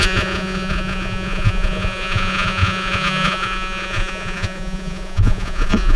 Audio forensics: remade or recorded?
remade